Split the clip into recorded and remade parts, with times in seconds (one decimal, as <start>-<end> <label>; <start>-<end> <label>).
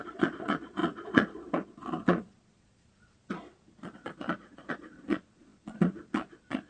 0.0-6.7 remade